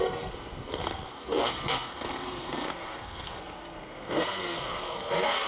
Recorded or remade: remade